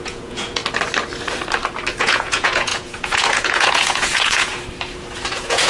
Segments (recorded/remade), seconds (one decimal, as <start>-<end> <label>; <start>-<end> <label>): 0.0-0.6 remade; 0.6-2.0 recorded; 2.0-4.5 remade; 4.5-5.3 recorded; 5.3-5.7 remade